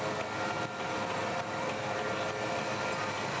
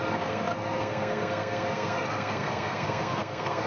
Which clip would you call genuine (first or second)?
first